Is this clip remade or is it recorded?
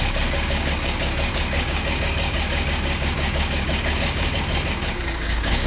remade